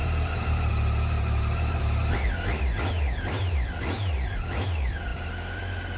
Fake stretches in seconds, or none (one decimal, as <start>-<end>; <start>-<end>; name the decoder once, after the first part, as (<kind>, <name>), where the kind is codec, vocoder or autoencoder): 0.0-2.0 (vocoder, BigVGAN v2); 2.9-6.0